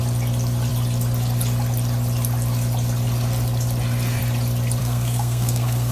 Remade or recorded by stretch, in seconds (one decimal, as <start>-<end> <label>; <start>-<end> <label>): 0.0-4.8 recorded; 4.8-5.9 remade